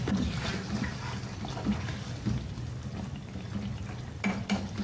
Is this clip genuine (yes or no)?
yes